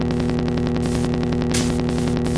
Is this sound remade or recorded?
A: recorded